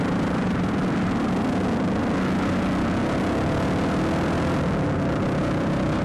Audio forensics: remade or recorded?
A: recorded